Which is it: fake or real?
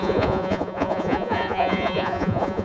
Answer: fake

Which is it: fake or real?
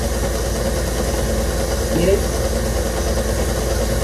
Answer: real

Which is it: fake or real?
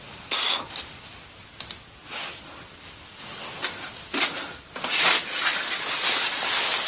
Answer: real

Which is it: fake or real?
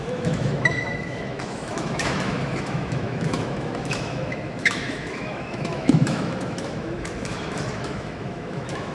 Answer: fake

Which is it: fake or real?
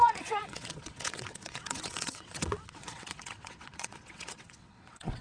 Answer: fake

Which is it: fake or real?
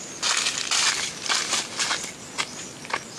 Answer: real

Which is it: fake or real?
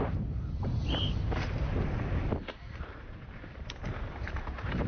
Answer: fake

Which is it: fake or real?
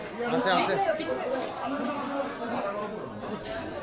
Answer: real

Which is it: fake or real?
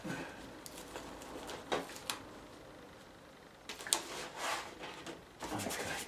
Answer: real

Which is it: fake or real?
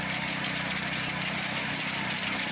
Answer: real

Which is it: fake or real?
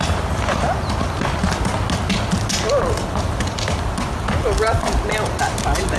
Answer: real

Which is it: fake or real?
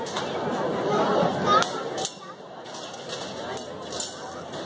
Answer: real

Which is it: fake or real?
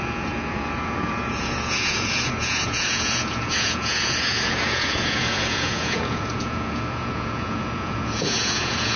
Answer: fake